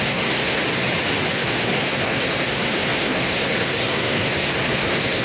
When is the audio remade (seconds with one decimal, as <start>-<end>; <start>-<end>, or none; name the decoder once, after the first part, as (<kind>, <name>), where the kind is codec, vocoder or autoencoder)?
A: 0.0-0.6 (codec, SNAC); 1.3-5.2

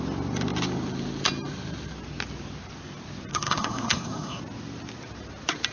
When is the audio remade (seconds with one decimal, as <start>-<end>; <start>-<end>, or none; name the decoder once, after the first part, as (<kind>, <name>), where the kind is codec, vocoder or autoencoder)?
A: 3.3-4.4 (codec, SNAC)

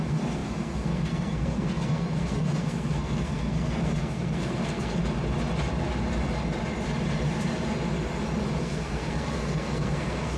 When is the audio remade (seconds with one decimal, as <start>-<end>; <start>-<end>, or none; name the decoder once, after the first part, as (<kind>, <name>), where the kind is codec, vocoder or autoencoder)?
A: 0.0-5.0 (codec, SNAC); 8.6-10.4

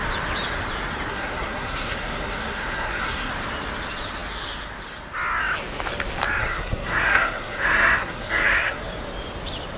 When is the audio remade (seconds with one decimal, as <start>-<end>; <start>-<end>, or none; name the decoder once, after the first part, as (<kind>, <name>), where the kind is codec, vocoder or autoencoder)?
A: 1.1-3.3 (codec, SNAC); 6.4-8.8